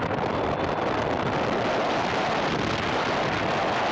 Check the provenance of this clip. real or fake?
real